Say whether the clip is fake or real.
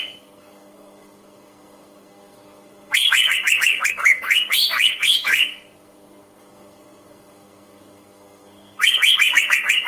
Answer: fake